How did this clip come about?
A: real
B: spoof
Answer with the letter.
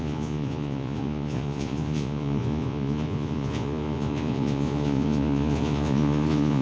B